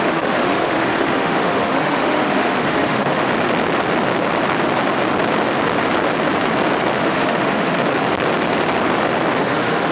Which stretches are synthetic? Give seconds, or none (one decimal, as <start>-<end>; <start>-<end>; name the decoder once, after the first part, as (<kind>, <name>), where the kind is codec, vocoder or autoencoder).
0.0-3.3 (autoencoder, DAC-VAE); 7.0-7.7; 9.4-9.9